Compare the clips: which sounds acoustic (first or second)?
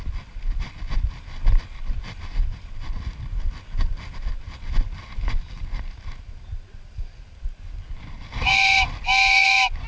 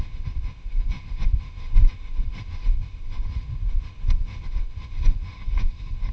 first